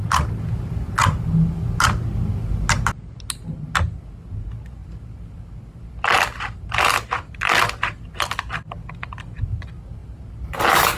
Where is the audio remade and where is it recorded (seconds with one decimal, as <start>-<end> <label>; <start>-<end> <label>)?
0.0-10.0 recorded; 10.0-11.0 remade